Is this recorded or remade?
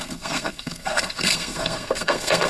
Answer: remade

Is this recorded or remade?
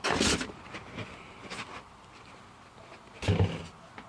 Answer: recorded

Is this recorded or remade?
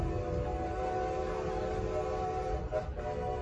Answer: recorded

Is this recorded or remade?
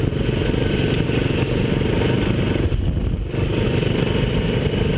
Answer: recorded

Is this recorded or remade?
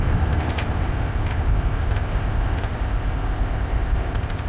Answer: remade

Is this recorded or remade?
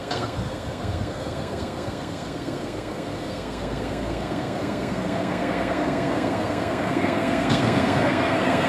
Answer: remade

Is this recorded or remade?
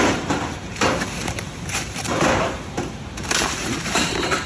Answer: remade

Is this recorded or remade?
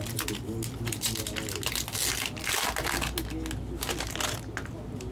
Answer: recorded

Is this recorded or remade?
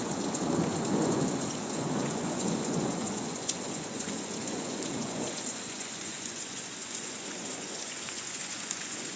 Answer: remade